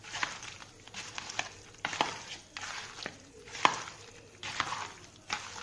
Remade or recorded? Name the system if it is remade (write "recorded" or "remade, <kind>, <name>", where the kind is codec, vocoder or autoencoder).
recorded